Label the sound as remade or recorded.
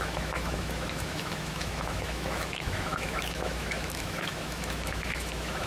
remade